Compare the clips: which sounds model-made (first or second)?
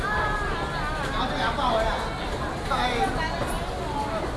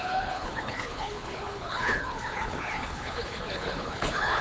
second